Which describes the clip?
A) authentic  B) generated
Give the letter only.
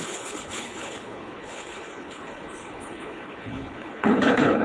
B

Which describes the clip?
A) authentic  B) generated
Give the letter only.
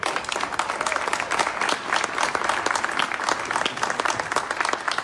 A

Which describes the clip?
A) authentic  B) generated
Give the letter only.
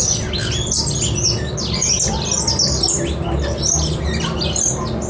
A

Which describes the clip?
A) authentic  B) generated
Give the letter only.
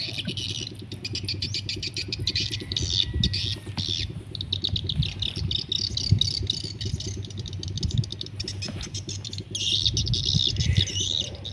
A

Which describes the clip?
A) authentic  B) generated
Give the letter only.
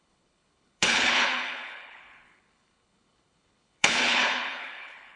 B